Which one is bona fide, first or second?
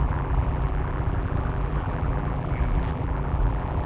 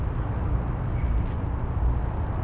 second